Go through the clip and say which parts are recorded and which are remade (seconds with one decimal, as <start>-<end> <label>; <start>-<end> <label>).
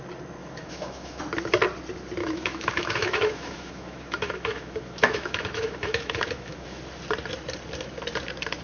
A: 0.0-0.4 recorded; 0.4-1.2 remade; 1.2-2.2 recorded; 2.2-6.8 remade; 6.8-8.6 recorded